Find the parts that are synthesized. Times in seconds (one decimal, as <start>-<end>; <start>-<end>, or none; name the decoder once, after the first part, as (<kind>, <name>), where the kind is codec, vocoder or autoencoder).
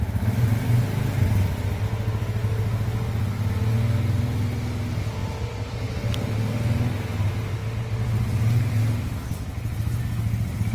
none